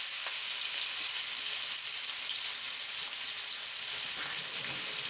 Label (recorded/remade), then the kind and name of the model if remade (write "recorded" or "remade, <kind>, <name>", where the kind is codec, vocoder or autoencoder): recorded